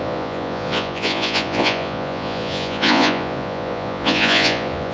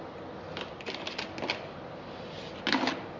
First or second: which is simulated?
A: first